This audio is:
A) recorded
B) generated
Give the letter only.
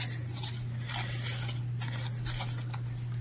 A